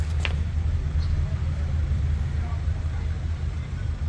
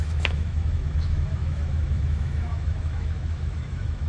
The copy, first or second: second